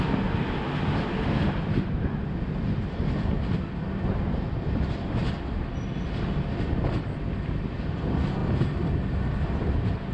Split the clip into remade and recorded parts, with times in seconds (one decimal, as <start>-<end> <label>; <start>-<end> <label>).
0.0-10.1 recorded